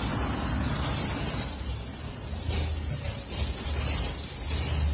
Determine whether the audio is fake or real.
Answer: real